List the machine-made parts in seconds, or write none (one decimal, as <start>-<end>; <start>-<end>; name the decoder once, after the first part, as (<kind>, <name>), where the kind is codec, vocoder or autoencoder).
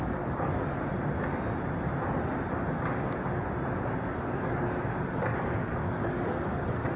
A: 0.0-0.5 (codec, DAC); 4.2-7.0